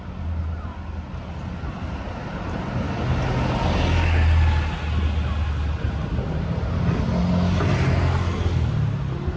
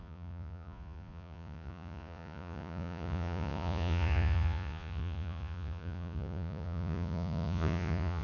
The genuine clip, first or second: first